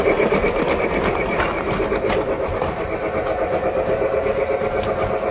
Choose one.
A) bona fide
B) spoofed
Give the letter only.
A